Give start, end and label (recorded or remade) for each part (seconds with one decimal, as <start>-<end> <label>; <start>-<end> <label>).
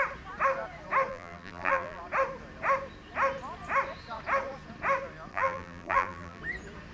0.0-1.1 recorded; 1.1-2.0 remade; 2.0-5.3 recorded; 5.3-6.4 remade; 6.4-6.9 recorded